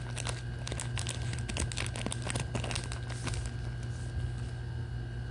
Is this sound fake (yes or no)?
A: no